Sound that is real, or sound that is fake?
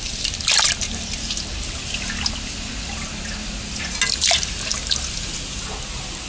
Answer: real